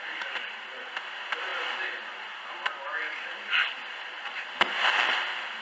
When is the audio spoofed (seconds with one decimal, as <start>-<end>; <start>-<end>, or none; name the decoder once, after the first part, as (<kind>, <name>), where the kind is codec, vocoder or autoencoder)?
none